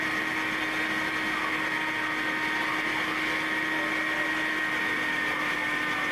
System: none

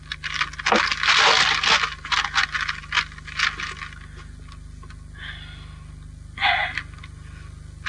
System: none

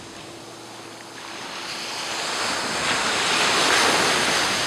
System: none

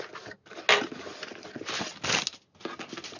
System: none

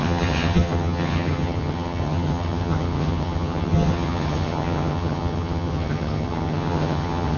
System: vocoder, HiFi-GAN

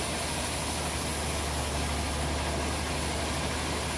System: none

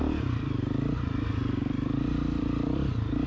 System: vocoder, BigVGAN v2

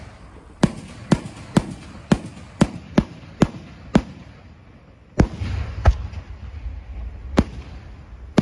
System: none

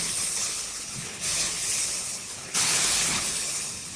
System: codec, HILCodec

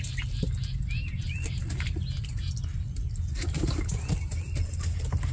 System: none